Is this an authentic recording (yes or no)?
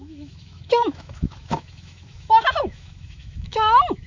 no